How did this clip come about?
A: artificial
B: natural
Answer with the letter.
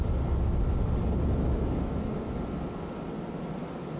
B